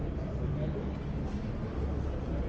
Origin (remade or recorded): recorded